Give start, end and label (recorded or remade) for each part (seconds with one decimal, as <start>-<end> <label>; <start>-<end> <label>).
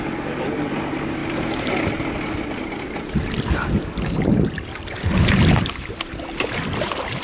0.0-7.2 recorded